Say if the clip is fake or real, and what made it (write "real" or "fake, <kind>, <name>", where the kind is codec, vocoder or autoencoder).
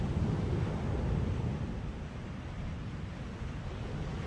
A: real